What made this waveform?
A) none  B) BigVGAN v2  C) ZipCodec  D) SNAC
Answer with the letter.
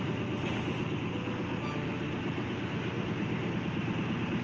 A